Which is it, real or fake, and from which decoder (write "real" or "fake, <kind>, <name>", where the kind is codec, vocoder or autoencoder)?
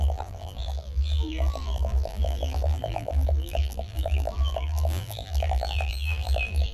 fake, vocoder, BigVGAN v2